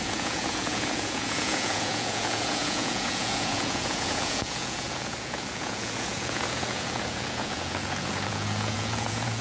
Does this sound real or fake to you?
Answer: fake